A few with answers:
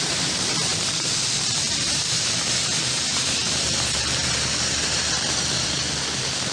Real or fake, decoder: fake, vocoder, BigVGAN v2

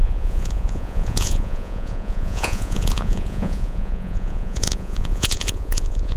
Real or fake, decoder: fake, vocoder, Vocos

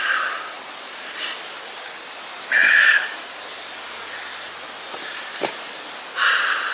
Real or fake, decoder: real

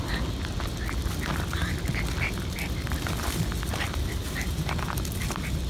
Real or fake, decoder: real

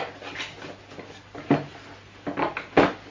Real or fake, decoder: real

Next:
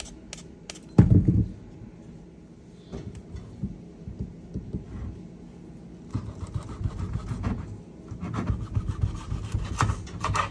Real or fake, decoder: real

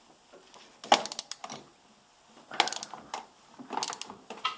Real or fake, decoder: real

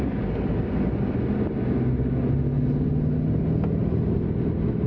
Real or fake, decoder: real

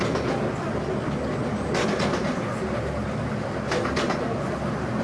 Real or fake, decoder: real